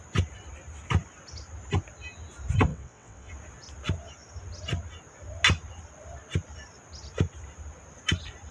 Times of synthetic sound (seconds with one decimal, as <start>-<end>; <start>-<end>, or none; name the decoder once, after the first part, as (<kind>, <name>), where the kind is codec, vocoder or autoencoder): 2.7-3.3 (vocoder, WaveNeXt)